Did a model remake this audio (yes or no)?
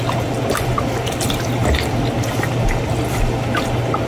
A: no